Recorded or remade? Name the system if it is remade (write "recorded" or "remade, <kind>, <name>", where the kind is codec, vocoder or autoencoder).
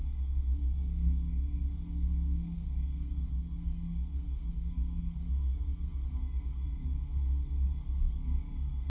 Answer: remade, codec, SNAC